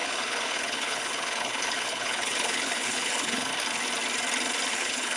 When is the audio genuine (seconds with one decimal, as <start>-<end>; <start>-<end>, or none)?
3.5-4.7